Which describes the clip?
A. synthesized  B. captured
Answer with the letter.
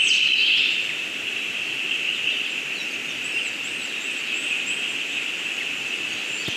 B